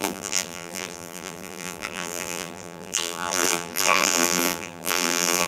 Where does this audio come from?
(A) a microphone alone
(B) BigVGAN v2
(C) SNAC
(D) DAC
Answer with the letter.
B